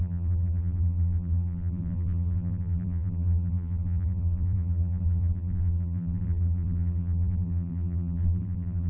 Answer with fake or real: fake